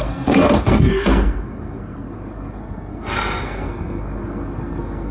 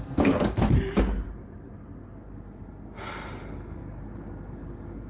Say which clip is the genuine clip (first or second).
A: second